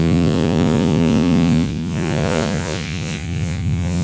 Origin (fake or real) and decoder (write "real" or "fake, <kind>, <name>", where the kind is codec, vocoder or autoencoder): fake, vocoder, Vocos